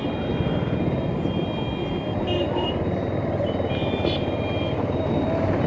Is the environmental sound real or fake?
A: real